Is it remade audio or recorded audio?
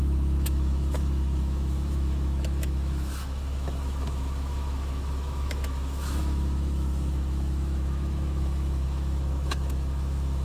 remade